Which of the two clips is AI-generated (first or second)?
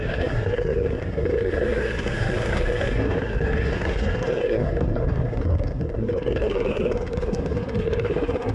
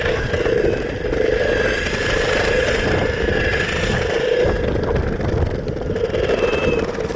first